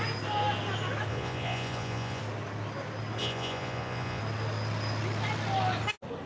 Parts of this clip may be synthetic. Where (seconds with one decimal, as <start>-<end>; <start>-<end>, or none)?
1.1-2.2; 3.2-4.2

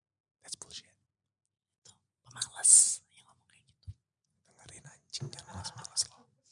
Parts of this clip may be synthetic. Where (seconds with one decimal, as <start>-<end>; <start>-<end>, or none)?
1.7-5.1

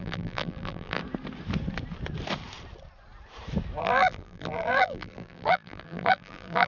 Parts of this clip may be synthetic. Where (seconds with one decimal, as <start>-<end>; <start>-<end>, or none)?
0.0-1.0; 3.8-6.7

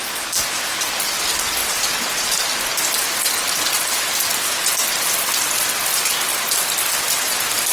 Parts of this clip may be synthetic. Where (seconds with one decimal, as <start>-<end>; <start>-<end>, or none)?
1.6-5.3

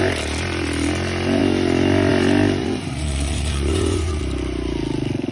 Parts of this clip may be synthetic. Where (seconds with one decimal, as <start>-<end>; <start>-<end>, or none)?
2.6-4.2